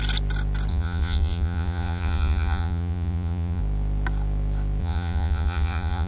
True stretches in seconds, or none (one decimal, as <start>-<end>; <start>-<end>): 0.0-0.7; 3.6-4.8